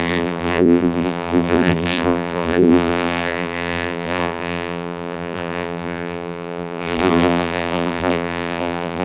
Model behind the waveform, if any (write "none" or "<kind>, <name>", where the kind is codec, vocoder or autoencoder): vocoder, BigVGAN v2